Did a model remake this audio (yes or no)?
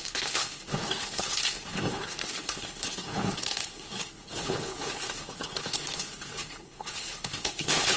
yes